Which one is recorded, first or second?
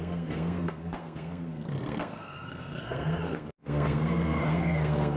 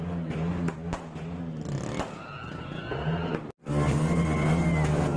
second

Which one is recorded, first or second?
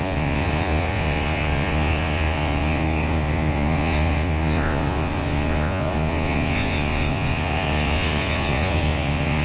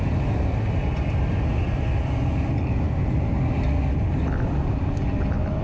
second